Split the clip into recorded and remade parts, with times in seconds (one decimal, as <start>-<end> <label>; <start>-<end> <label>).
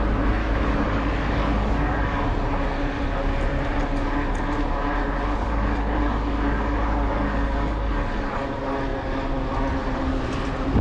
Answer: 0.0-0.4 recorded; 0.4-2.2 remade; 2.2-5.4 recorded; 5.4-8.5 remade; 8.5-10.8 recorded